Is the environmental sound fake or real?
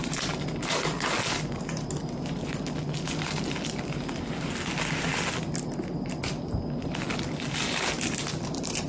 real